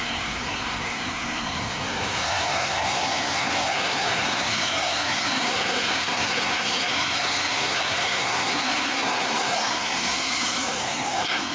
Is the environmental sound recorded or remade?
remade